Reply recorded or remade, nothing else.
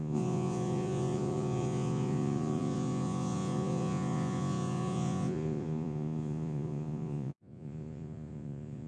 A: remade